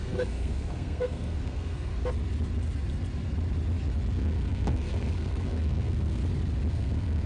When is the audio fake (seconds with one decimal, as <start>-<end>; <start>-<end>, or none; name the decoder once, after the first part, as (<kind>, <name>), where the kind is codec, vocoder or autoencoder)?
0.0-1.9 (codec, SNAC); 4.1-6.2; 6.7-7.3